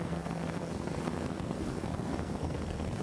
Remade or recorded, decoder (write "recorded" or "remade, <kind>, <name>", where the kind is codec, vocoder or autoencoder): remade, codec, SNAC